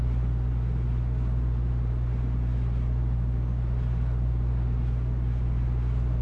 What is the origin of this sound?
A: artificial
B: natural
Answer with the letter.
B